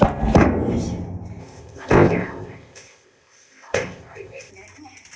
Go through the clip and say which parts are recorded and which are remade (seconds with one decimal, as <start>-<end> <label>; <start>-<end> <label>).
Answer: 0.0-1.4 recorded; 1.4-4.5 remade; 4.5-5.2 recorded